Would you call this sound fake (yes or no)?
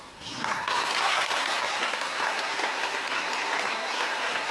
yes